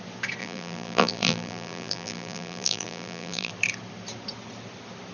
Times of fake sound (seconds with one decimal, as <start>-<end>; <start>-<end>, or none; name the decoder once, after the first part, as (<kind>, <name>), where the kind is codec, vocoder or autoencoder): 0.4-3.5 (vocoder, BigVGAN v2)